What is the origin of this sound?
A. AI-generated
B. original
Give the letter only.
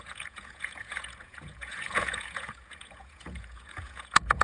A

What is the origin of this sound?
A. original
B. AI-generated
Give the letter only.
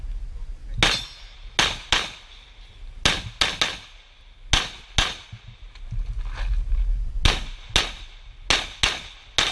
A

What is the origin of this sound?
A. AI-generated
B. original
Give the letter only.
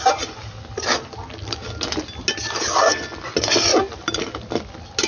B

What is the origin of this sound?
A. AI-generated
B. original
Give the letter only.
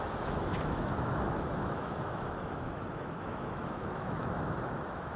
A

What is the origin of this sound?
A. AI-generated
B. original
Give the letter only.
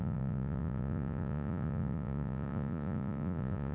A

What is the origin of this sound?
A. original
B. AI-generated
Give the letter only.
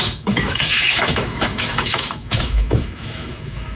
B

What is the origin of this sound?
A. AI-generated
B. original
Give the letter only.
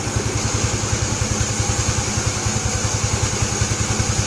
B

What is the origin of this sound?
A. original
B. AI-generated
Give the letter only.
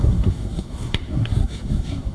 B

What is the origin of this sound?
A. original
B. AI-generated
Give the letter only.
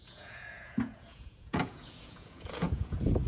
B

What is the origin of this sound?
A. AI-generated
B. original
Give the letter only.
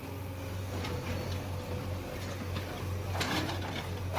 B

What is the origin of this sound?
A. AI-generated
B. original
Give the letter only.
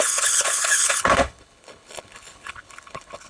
A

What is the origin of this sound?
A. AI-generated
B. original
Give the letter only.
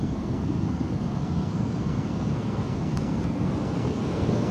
A